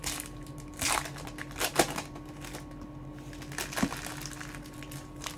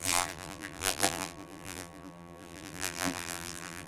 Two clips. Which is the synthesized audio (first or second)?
second